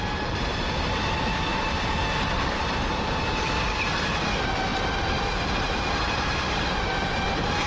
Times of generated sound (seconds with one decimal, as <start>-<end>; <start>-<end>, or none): none